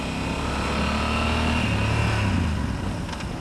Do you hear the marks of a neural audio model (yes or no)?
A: no